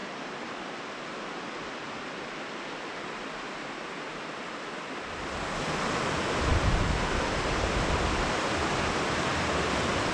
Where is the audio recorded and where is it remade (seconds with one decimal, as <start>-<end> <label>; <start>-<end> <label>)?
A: 0.0-6.5 recorded; 6.5-8.5 remade; 8.5-10.1 recorded